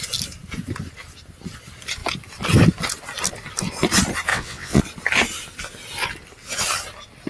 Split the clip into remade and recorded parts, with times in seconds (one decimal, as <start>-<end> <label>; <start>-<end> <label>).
0.0-4.3 recorded; 4.3-4.8 remade; 4.8-7.3 recorded